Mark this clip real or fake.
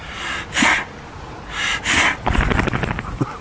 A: real